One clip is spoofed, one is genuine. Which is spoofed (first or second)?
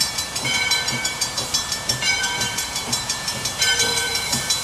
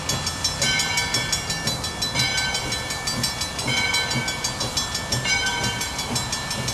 first